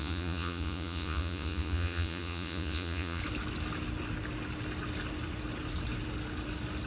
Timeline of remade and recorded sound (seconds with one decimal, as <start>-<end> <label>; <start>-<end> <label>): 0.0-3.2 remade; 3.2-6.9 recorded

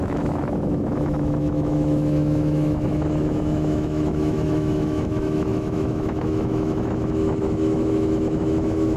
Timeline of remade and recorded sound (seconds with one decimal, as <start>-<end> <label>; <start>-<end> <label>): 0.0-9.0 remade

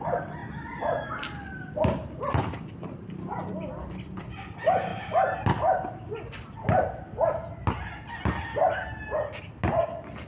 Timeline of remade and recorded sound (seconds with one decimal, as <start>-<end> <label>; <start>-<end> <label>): 0.0-10.3 recorded